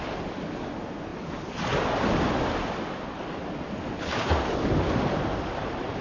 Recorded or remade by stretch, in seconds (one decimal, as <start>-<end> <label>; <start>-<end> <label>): 0.0-6.0 recorded

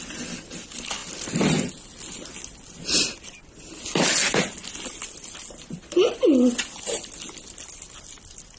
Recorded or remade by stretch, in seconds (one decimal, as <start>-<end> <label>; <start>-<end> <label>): 0.0-8.6 recorded

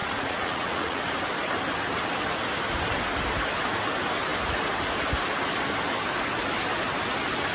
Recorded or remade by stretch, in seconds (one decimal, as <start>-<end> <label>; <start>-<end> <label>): 0.0-1.0 remade; 1.0-7.5 recorded